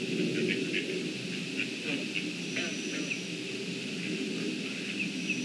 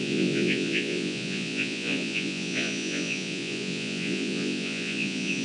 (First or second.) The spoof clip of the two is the second